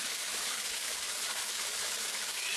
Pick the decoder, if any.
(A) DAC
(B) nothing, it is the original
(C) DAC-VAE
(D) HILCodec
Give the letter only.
A